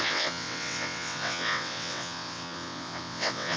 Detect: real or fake fake